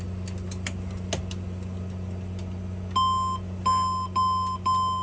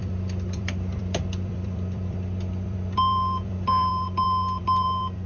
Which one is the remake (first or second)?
second